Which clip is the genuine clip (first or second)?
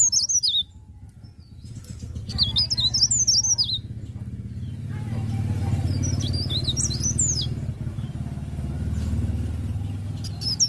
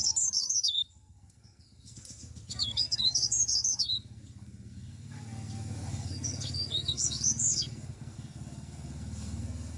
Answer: first